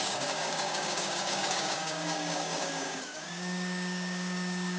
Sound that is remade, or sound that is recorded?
remade